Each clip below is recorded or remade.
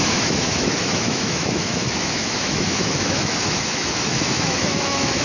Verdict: remade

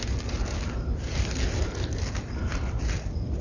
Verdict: recorded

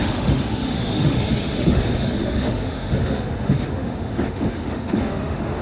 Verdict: remade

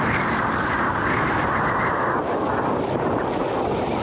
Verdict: recorded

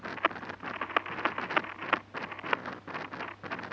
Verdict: recorded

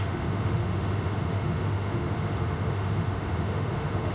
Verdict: remade